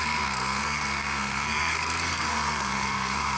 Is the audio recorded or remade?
remade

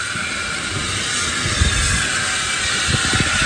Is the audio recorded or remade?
recorded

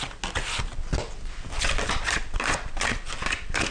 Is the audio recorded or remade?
recorded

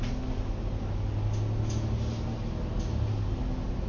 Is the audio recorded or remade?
recorded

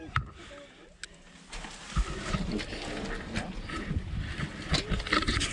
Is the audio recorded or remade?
recorded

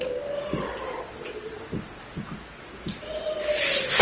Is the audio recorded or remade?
recorded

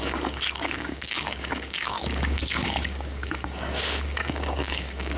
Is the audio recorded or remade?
remade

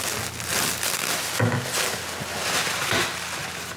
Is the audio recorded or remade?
recorded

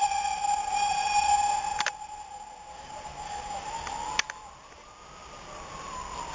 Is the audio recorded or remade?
recorded